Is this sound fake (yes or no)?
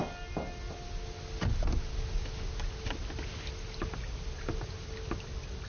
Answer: no